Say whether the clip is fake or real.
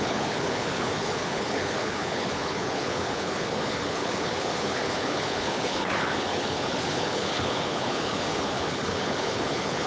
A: fake